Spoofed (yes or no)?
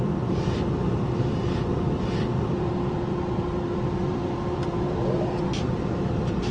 yes